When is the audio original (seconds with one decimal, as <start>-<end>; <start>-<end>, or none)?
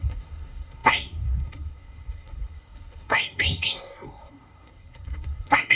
none